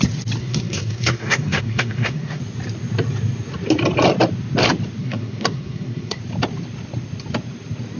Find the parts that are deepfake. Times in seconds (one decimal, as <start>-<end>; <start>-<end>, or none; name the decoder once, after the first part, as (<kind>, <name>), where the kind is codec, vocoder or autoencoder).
0.4-2.4 (codec, SNAC); 5.0-6.2